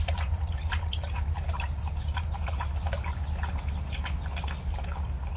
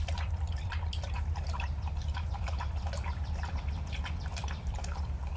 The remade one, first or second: second